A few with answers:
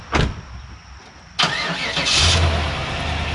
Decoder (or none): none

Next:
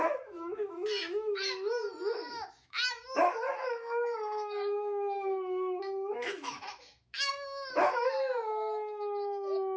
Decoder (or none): autoencoder, DAC-VAE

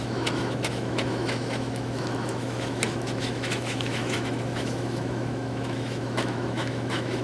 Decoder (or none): autoencoder, DAC-VAE